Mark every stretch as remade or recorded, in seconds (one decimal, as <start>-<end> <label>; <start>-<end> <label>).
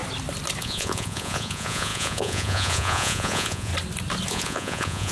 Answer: 0.0-0.6 recorded; 0.6-3.7 remade; 3.7-4.3 recorded; 4.3-5.1 remade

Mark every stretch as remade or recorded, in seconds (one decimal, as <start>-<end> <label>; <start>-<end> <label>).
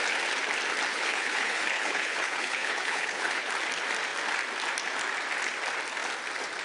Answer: 0.0-0.9 recorded; 0.9-3.5 remade; 3.5-6.6 recorded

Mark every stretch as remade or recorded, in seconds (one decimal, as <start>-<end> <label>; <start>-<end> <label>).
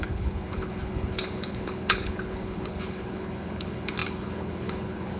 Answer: 0.0-5.2 remade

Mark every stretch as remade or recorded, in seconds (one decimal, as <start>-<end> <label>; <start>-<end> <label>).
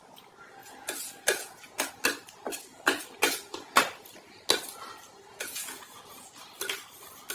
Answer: 0.0-0.6 recorded; 0.6-1.9 remade; 1.9-2.7 recorded; 2.7-3.8 remade; 3.8-5.3 recorded; 5.3-6.4 remade; 6.4-7.3 recorded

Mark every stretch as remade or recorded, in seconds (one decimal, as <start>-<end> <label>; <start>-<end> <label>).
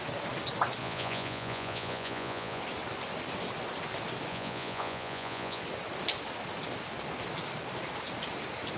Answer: 0.0-0.8 recorded; 0.8-2.6 remade; 2.6-4.3 recorded; 4.3-5.6 remade; 5.6-8.8 recorded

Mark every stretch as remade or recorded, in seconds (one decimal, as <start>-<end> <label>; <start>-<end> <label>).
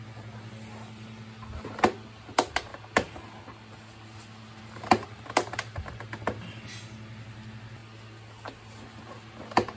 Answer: 0.0-9.8 recorded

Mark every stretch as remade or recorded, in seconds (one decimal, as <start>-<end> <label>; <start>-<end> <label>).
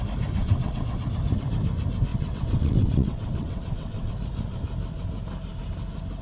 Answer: 0.0-0.4 recorded; 0.4-1.0 remade; 1.0-2.1 recorded; 2.1-4.1 remade; 4.1-6.2 recorded